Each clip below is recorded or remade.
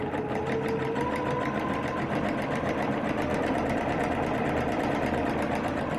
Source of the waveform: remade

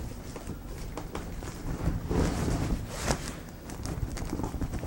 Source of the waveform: recorded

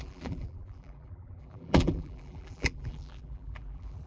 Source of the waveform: remade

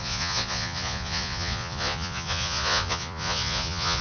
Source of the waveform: remade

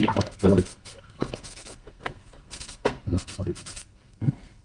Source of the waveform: remade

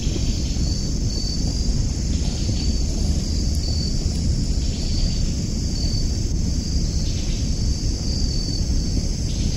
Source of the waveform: recorded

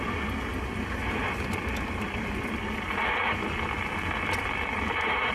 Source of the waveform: recorded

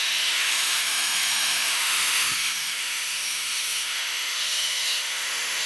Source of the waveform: remade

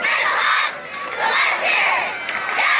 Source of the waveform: recorded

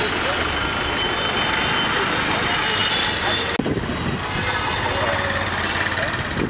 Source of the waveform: recorded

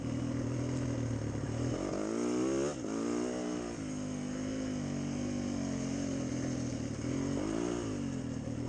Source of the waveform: recorded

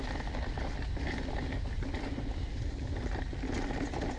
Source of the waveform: recorded